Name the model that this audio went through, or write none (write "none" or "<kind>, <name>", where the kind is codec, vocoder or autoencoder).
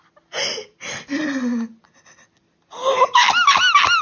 none